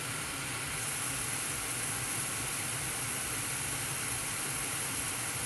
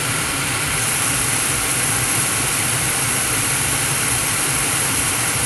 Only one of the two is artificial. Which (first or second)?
second